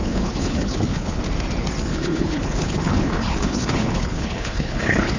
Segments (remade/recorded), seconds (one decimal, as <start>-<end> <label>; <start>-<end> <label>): 0.0-1.2 remade; 1.2-1.9 recorded; 1.9-5.2 remade

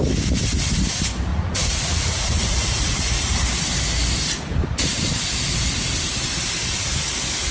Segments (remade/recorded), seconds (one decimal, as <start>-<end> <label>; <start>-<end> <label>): 0.0-1.3 recorded; 1.3-3.4 remade; 3.4-7.5 recorded

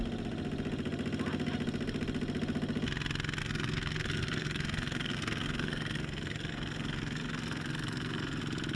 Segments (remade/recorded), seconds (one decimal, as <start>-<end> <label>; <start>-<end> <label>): 0.0-3.4 recorded; 3.4-8.4 remade; 8.4-8.8 recorded